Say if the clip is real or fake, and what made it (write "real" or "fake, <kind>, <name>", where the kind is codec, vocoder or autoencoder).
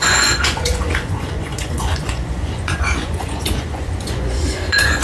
fake, vocoder, Vocos